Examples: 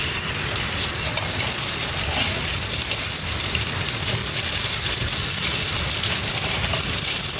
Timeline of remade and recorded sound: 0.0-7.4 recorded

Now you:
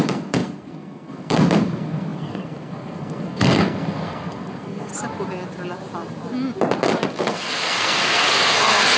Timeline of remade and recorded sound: 0.0-4.9 remade; 4.9-7.2 recorded; 7.2-9.0 remade